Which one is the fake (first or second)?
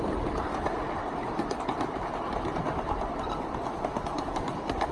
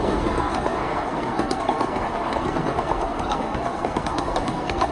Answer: second